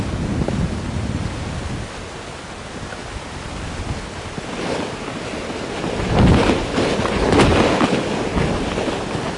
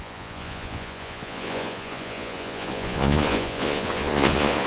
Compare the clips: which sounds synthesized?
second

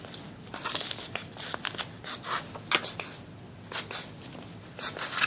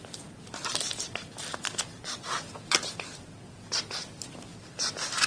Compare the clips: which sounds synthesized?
second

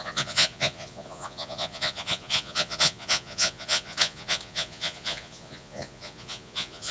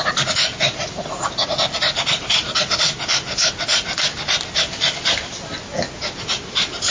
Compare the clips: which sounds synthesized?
first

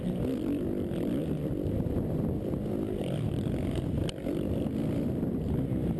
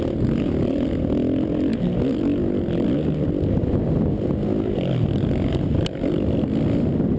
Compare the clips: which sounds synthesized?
first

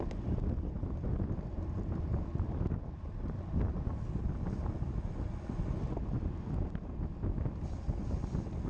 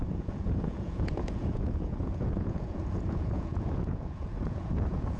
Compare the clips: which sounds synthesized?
second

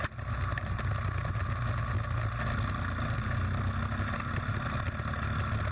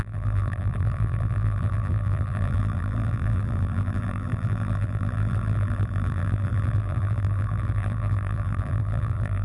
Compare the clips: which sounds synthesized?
second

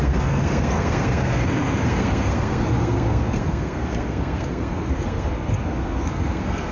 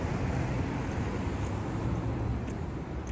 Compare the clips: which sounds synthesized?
first